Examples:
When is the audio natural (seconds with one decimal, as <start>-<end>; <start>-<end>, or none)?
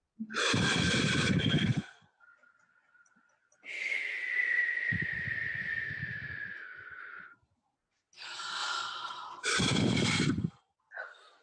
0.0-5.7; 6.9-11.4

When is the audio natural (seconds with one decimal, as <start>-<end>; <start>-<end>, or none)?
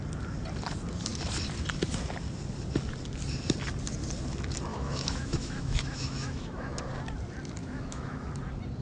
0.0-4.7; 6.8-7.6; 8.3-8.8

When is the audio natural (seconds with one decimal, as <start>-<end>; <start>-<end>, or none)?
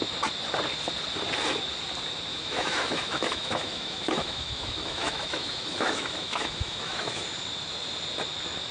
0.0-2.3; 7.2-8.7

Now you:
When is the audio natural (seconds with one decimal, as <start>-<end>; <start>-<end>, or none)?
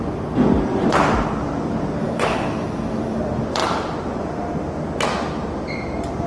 0.0-2.0; 3.2-6.3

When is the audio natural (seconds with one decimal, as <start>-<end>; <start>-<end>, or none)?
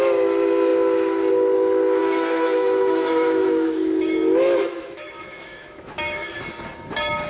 0.0-2.0; 6.4-7.3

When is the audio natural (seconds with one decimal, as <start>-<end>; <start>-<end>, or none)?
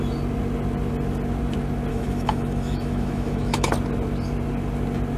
0.0-1.9; 3.7-5.2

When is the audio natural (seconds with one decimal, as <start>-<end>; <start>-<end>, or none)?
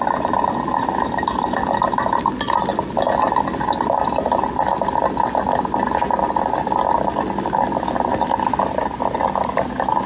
0.0-10.1